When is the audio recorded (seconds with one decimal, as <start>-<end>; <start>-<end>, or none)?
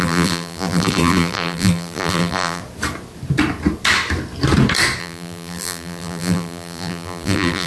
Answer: 2.6-5.0